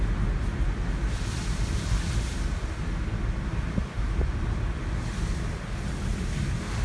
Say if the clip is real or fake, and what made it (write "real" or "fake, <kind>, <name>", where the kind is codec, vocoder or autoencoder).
real